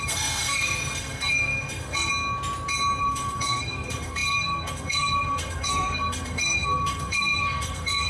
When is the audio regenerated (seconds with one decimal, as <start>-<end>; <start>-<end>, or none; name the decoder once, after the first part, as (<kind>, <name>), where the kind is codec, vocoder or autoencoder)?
0.0-2.1 (codec, SNAC); 3.0-8.1